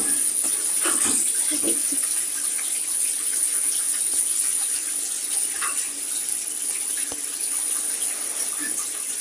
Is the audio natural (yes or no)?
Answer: yes